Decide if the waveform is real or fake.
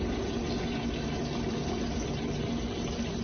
real